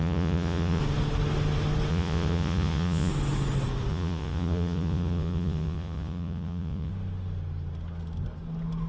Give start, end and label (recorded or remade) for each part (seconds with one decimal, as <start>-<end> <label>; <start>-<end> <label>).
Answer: 0.0-0.8 remade; 0.8-1.9 recorded; 1.9-3.1 remade; 3.1-3.9 recorded; 3.9-6.9 remade; 6.9-8.9 recorded